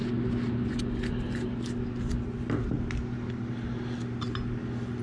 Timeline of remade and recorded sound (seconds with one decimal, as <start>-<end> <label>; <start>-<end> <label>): 0.0-5.0 recorded